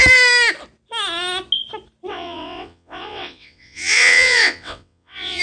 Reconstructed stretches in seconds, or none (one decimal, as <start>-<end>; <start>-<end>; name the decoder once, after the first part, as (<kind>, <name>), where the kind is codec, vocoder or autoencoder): 2.1-5.4 (vocoder, WaveNeXt)